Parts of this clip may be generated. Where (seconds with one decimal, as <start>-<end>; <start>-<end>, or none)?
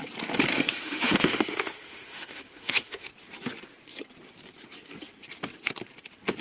0.5-3.1